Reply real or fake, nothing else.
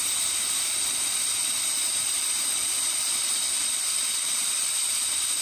fake